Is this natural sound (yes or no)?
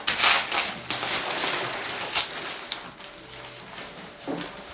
yes